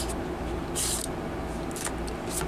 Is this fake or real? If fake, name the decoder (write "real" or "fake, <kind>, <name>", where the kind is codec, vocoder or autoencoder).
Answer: real